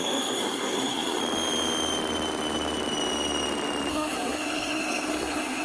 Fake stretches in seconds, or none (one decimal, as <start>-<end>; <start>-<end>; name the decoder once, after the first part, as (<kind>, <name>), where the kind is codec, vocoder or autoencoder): 0.0-1.2 (codec, SNAC); 3.9-5.6